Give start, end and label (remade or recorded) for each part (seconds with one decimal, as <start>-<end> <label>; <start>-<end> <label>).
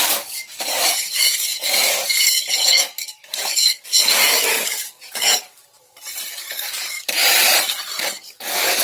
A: 0.0-5.6 remade; 5.6-6.3 recorded; 6.3-7.2 remade; 7.2-8.0 recorded; 8.0-8.8 remade